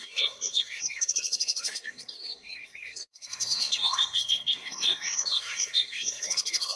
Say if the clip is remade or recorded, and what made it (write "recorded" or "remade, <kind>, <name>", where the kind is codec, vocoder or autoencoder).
remade, codec, SNAC